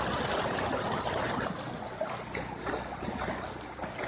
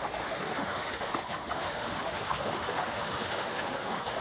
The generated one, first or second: second